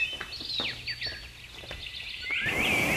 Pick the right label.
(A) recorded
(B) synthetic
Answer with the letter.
A